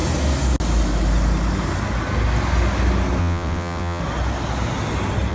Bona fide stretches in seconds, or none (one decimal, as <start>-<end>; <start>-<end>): 0.0-3.2; 4.0-5.3